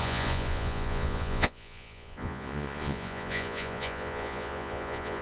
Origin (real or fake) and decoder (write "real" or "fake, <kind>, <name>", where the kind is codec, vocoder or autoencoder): fake, vocoder, Vocos